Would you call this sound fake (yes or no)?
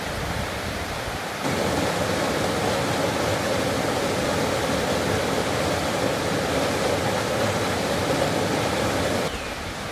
no